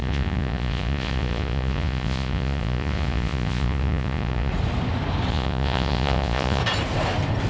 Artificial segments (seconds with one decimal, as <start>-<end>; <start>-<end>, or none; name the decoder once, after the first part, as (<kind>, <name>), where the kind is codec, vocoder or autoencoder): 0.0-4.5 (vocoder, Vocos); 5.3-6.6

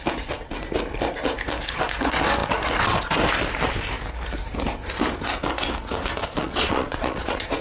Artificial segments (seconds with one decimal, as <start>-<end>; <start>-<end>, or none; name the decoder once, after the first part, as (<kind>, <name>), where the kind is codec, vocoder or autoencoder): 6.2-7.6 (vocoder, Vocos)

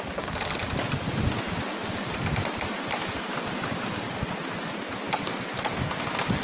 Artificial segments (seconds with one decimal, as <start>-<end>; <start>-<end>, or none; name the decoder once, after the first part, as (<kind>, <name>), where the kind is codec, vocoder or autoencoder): none